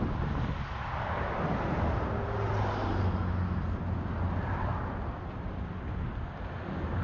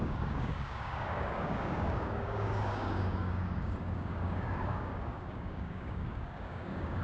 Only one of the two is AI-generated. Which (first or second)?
second